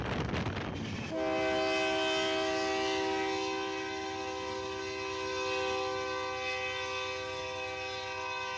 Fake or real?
real